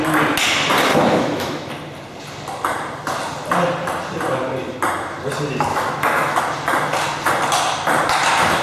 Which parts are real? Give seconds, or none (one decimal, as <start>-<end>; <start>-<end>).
0.0-0.9; 1.7-5.7; 6.4-8.6